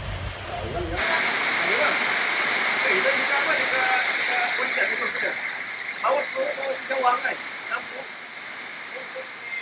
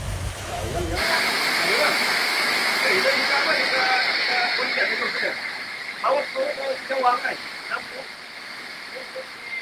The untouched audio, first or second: first